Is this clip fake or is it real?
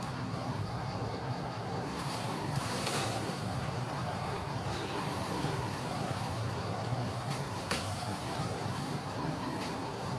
fake